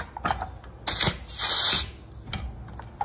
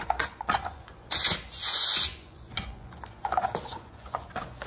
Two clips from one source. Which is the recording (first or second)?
first